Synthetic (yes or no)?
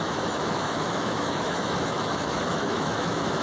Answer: yes